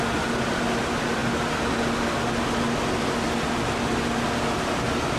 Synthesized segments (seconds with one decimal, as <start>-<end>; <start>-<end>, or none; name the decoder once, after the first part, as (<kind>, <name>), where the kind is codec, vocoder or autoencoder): none